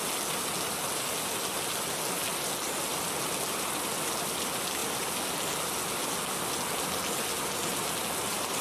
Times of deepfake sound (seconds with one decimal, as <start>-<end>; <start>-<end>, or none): none